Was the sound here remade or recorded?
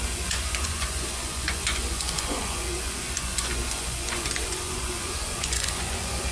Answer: remade